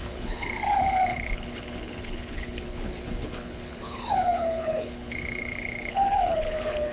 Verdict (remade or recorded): remade